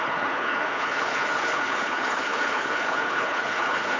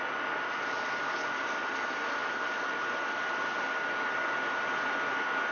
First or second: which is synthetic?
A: first